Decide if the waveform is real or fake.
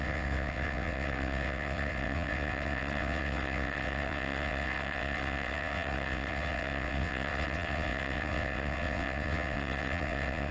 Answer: fake